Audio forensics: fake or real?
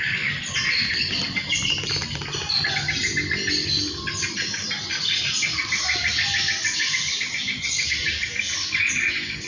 real